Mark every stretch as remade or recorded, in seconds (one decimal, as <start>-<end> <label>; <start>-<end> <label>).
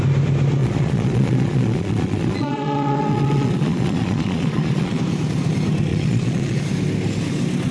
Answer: 0.0-0.6 recorded; 0.6-5.0 remade; 5.0-5.9 recorded; 5.9-6.6 remade; 6.6-7.7 recorded